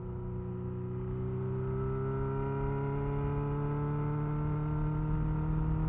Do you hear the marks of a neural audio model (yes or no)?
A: no